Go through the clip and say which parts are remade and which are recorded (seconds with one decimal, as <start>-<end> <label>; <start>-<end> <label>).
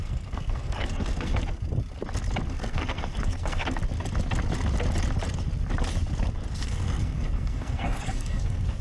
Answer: 0.0-1.3 remade; 1.3-2.5 recorded; 2.5-3.8 remade; 3.8-6.5 recorded; 6.5-8.8 remade